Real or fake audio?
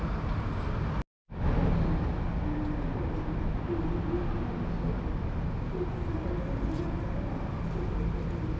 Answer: real